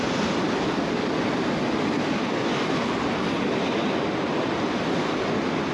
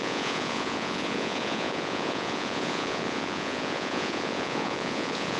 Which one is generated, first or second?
second